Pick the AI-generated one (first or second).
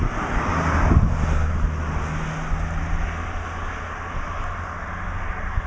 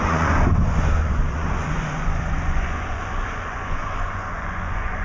second